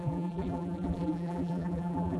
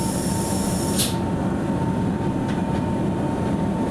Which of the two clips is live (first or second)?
second